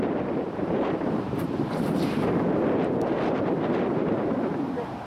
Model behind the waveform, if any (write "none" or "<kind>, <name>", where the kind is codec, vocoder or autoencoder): vocoder, BigVGAN v2